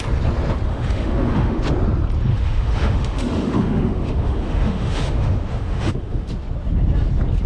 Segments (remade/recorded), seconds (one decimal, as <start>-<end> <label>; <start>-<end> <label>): 0.0-0.7 recorded; 0.7-1.6 remade; 1.6-2.3 recorded; 2.3-6.3 remade; 6.3-7.5 recorded